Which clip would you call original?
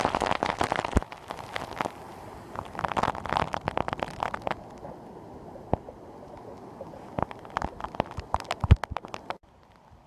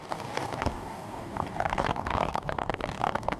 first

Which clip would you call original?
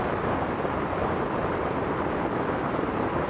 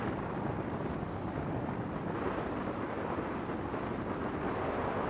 first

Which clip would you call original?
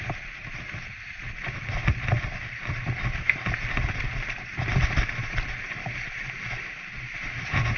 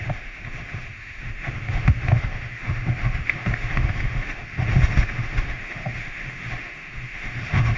first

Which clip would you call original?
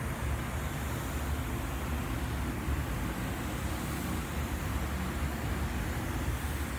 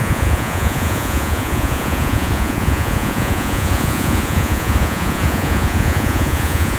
first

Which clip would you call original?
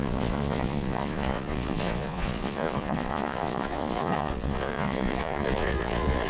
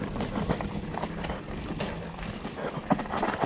second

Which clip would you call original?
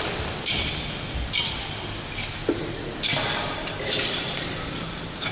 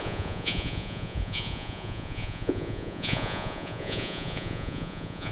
first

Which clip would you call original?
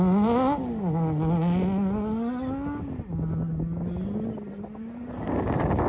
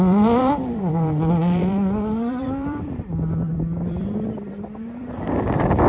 first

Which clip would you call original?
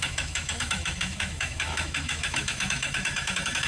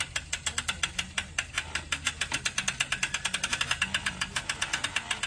second